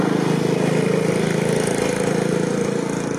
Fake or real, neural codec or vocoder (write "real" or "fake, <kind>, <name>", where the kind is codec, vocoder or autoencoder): real